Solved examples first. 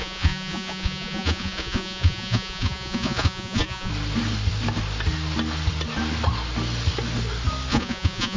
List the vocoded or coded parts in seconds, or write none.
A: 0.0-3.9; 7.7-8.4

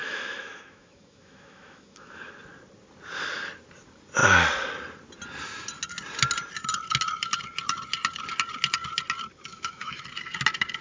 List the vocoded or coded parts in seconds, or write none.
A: 0.0-2.3; 9.5-10.0